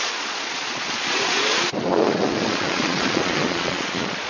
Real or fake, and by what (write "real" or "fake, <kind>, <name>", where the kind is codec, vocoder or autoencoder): fake, vocoder, Vocos